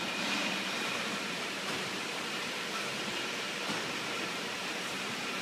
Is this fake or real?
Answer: fake